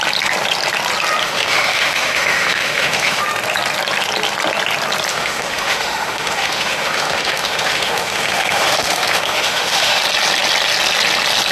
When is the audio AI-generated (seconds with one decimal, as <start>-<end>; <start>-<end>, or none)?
1.2-3.2; 5.1-10.0